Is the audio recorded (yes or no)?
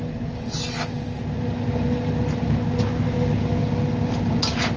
yes